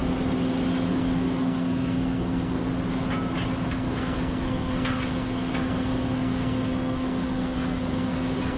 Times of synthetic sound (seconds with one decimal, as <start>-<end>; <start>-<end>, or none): 0.9-2.7; 3.7-8.6

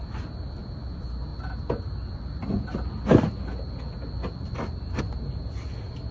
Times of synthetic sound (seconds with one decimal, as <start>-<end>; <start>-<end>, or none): none

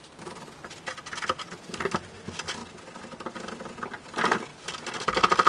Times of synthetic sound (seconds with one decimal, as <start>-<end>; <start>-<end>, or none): none